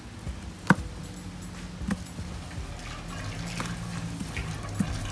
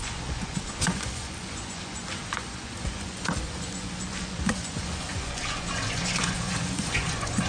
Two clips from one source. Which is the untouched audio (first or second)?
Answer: first